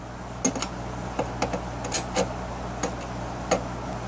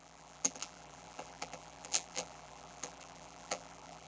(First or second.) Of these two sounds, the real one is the first